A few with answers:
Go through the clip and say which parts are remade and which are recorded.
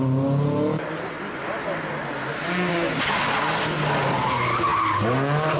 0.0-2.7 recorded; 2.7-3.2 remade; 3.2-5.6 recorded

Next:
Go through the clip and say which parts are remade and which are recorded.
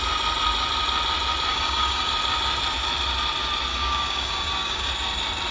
0.0-1.5 recorded; 1.5-2.1 remade; 2.1-3.7 recorded; 3.7-4.9 remade; 4.9-5.5 recorded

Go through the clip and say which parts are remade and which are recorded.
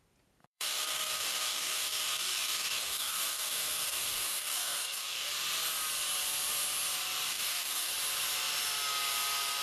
0.0-0.4 recorded; 0.4-5.3 remade; 5.3-7.3 recorded; 7.3-7.9 remade; 7.9-9.6 recorded